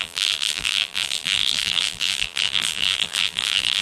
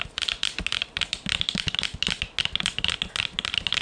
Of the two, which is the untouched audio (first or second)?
second